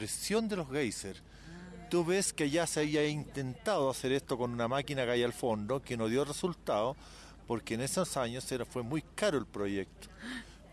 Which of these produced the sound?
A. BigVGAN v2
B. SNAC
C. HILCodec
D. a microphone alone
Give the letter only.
D